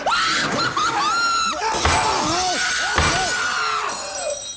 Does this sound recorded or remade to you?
recorded